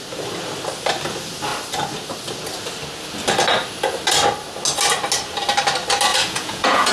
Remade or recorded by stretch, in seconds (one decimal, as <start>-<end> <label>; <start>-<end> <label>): 0.0-6.1 recorded; 6.1-6.9 remade